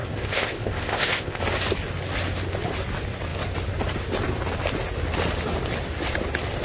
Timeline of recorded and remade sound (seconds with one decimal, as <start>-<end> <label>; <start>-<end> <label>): 0.0-1.4 remade; 1.4-6.6 recorded